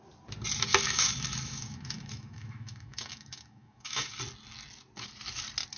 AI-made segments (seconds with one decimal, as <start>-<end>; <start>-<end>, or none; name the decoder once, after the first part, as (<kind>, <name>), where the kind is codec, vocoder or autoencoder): 0.7-4.1 (autoencoder, DAC-VAE)